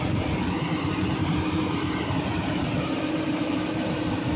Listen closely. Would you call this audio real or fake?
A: fake